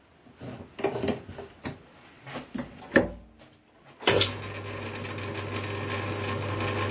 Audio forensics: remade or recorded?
recorded